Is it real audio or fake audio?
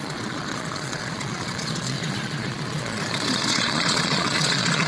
fake